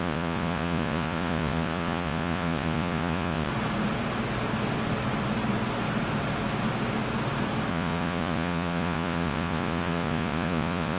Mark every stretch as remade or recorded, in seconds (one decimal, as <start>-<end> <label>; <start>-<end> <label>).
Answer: 0.0-3.5 remade; 3.5-7.7 recorded; 7.7-11.0 remade